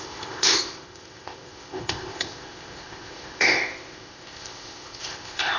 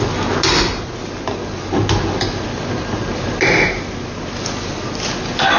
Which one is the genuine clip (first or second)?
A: second